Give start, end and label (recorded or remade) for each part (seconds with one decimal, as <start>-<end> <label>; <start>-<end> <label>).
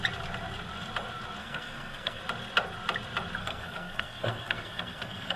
0.0-1.4 recorded; 1.4-2.2 remade; 2.2-3.4 recorded; 3.4-5.4 remade